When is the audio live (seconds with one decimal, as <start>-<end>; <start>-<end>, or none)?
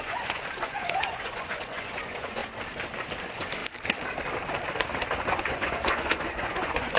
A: 2.4-3.2; 3.6-5.2